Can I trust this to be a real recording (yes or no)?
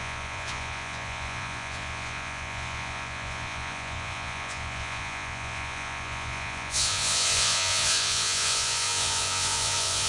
no